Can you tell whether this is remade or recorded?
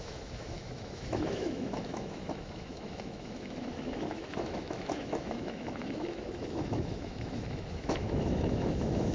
remade